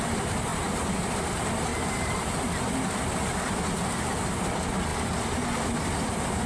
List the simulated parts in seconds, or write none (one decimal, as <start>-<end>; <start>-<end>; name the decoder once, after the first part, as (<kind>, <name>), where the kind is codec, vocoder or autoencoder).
0.5-1.2 (vocoder, BigVGAN v2); 1.7-4.4